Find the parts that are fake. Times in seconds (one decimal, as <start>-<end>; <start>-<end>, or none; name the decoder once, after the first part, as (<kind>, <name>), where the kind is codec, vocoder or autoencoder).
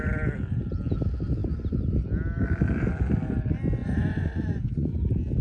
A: 3.8-4.9 (vocoder, Vocos)